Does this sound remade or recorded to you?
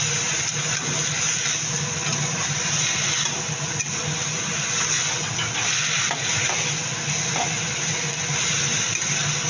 recorded